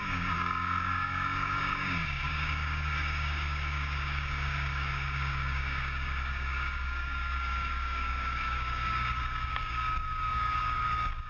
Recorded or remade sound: remade